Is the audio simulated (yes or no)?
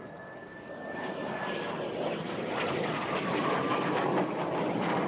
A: no